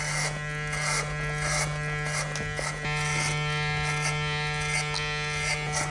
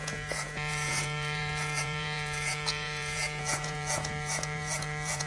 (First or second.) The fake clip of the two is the second